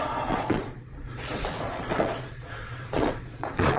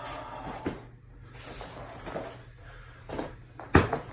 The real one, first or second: second